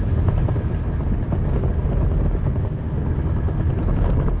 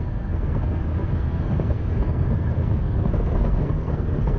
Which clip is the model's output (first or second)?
second